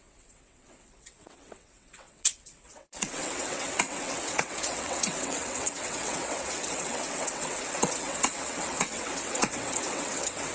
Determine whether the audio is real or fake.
fake